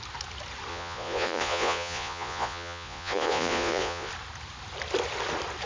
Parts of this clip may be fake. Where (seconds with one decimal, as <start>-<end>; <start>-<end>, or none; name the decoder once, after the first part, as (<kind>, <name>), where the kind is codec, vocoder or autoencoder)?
0.7-4.1 (vocoder, Vocos)